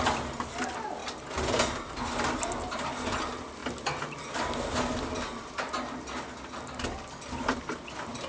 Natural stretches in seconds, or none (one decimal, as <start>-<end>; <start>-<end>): 0.0-8.3